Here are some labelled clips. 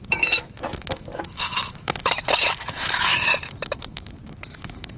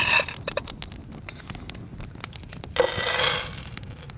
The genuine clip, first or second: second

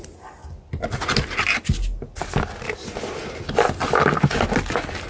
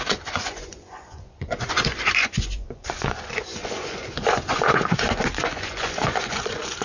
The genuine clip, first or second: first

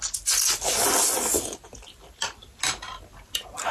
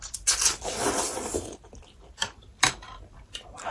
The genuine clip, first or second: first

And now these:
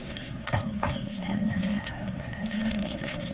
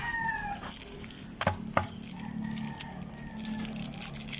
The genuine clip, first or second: second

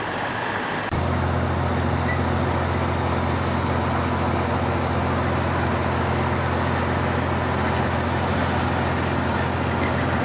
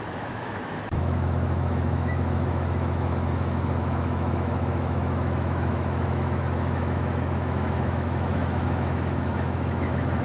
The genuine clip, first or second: first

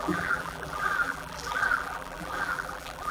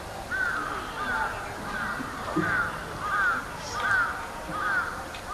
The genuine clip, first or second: second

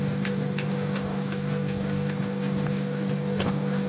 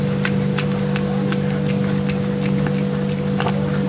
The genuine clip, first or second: second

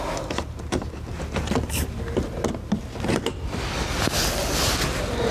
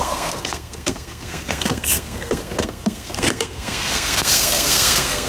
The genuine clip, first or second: first